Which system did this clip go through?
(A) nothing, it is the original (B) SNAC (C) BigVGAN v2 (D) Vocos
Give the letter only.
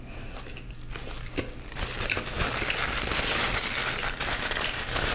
A